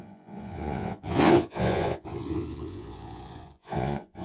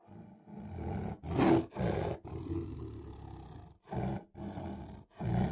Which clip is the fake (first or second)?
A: first